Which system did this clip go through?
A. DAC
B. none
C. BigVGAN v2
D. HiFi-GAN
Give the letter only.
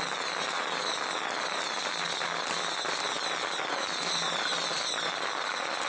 B